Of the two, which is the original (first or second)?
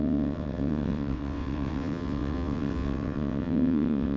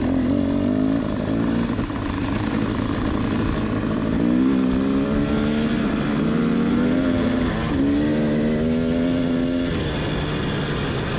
second